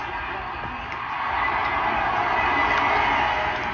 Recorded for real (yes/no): yes